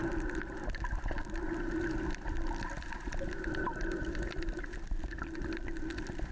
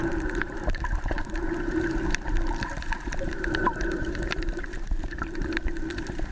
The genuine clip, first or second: first